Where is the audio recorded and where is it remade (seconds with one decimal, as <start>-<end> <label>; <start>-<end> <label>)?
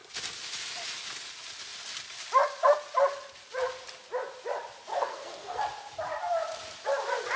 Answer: 0.0-4.9 recorded; 4.9-5.6 remade; 5.6-7.4 recorded